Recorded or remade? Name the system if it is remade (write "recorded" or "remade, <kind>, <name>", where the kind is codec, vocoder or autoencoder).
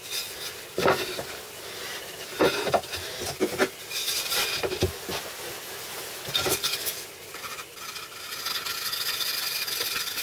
recorded